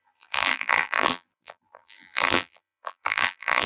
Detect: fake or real fake